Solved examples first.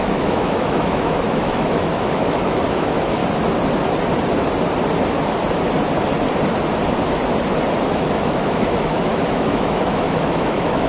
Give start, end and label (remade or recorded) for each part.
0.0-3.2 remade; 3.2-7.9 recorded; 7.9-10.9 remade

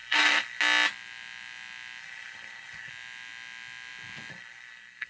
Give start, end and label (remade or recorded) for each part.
0.0-0.6 remade; 0.6-2.0 recorded; 2.0-2.9 remade; 2.9-4.3 recorded; 4.3-5.1 remade

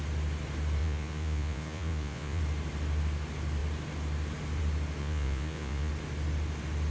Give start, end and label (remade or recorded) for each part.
0.0-0.8 recorded; 0.8-2.4 remade; 2.4-5.0 recorded; 5.0-5.9 remade; 5.9-6.9 recorded

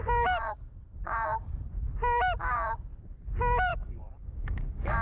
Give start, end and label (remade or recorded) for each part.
0.0-3.7 recorded; 3.7-5.0 remade

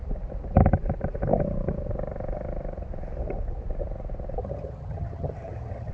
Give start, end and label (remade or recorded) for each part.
0.0-4.4 recorded; 4.4-5.9 remade

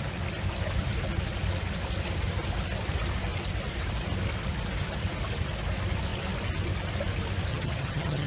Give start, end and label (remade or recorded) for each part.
0.0-7.5 recorded; 7.5-8.3 remade